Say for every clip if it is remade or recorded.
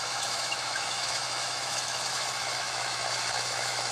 remade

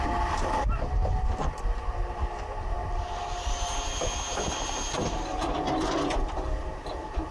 recorded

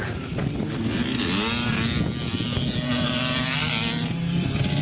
recorded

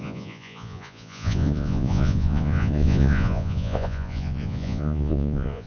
remade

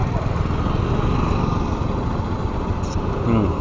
recorded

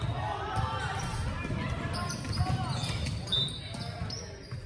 recorded